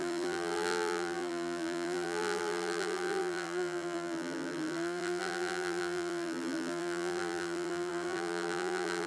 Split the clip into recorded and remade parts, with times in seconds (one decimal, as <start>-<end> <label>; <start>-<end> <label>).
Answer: 0.0-9.1 remade